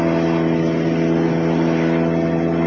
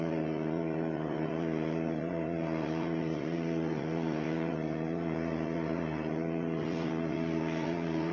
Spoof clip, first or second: second